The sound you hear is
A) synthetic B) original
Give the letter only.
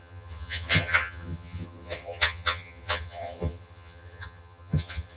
A